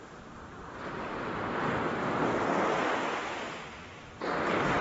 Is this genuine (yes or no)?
yes